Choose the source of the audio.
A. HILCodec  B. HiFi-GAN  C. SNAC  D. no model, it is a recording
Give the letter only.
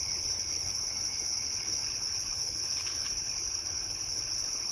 A